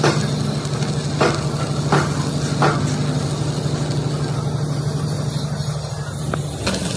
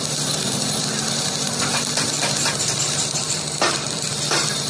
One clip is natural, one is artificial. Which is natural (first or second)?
first